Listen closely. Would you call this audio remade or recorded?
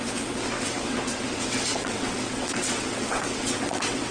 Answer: remade